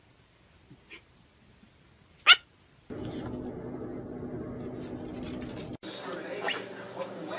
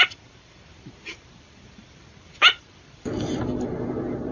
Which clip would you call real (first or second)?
first